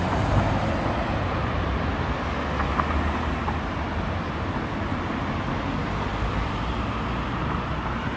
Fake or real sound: real